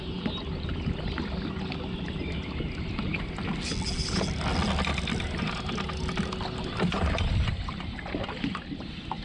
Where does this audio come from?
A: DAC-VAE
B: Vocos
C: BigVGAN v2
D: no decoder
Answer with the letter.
D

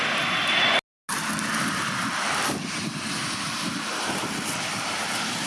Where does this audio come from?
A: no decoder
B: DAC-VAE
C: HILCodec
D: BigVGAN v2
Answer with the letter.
A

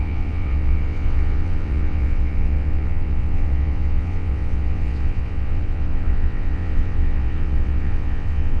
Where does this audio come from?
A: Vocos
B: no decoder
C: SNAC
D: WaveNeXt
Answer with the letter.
D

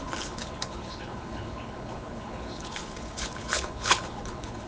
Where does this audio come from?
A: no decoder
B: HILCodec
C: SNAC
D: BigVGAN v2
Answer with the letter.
B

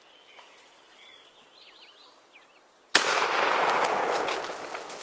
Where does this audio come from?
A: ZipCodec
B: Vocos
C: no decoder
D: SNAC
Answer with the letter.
C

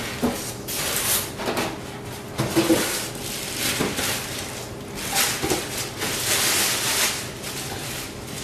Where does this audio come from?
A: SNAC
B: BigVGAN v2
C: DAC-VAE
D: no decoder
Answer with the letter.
D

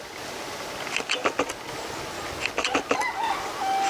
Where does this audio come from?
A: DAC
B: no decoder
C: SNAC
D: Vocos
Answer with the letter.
B